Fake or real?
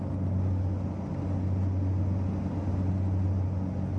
real